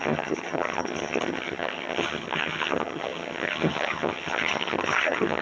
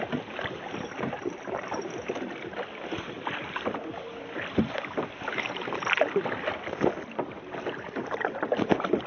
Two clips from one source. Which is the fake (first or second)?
first